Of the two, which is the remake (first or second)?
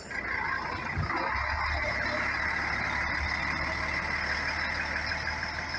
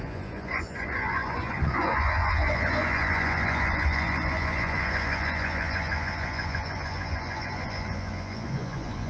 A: second